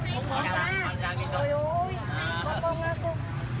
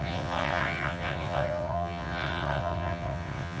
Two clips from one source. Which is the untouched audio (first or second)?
first